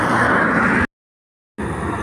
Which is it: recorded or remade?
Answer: recorded